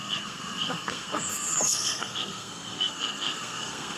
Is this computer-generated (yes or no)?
yes